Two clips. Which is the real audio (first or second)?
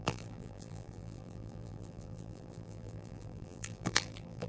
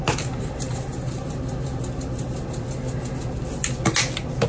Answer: second